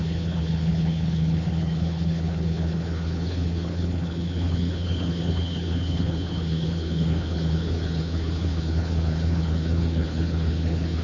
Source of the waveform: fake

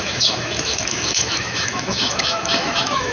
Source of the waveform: fake